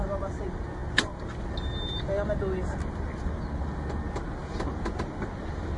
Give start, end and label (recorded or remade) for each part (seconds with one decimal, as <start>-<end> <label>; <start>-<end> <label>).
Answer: 0.0-5.8 recorded

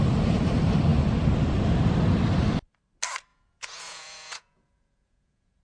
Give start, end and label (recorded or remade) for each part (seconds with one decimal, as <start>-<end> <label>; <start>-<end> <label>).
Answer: 0.0-3.3 recorded; 3.3-5.6 remade

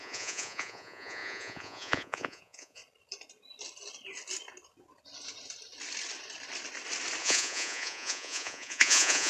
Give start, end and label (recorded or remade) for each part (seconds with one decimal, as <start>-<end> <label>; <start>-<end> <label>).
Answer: 0.0-2.8 remade; 2.8-7.2 recorded; 7.2-9.3 remade

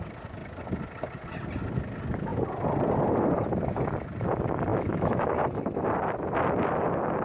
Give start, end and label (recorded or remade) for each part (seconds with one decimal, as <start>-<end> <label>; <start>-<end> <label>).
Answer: 0.0-4.7 recorded; 4.7-5.4 remade; 5.4-7.2 recorded

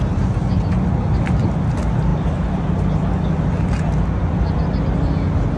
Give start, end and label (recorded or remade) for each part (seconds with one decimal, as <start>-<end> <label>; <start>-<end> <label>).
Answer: 0.0-5.6 recorded

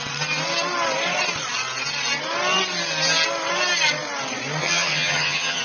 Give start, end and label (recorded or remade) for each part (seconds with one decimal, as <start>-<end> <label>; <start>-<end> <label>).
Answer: 0.0-4.6 recorded; 4.6-5.6 remade

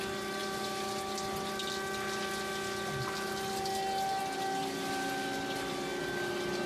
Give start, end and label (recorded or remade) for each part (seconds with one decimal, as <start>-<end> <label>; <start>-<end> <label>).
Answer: 0.0-6.7 recorded